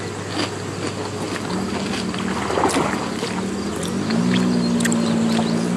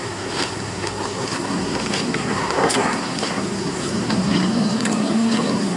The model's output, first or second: second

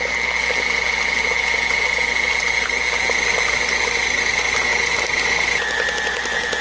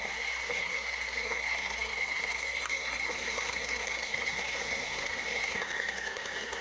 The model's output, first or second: second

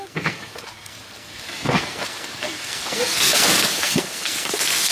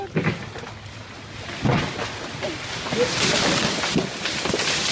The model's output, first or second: first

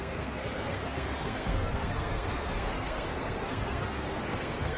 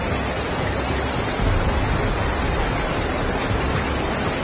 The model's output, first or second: first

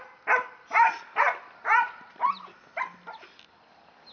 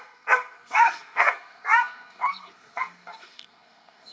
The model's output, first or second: second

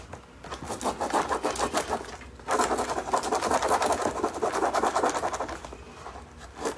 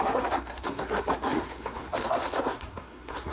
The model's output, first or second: second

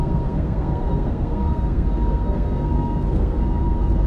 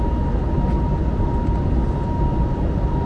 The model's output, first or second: first